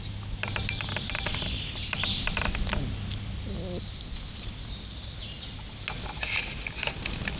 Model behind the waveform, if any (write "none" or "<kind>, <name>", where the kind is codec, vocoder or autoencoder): none